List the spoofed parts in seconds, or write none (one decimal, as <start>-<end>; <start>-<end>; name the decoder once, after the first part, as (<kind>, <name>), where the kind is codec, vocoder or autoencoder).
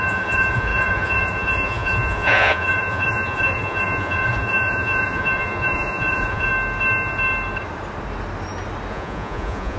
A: 0.0-6.5 (vocoder, Vocos); 8.9-9.8